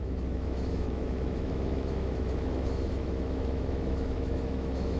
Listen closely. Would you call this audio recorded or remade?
remade